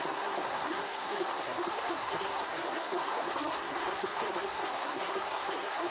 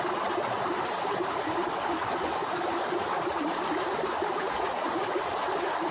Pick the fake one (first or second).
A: first